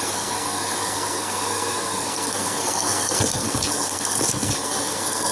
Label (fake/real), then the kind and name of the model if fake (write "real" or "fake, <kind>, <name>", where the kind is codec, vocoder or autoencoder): fake, codec, SNAC